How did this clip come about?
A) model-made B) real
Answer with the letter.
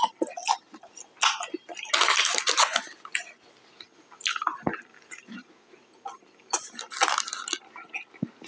B